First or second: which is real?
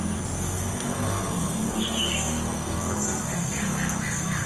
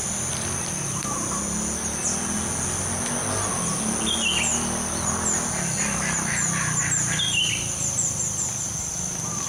second